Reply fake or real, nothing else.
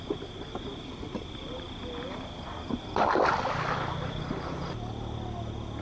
real